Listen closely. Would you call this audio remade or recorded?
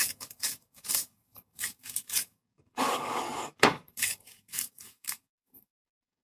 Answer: remade